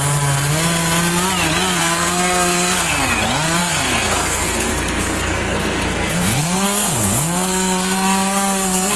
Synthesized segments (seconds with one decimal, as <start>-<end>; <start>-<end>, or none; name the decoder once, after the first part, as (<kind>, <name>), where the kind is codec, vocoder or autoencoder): 1.8-2.9 (codec, SNAC); 3.6-9.0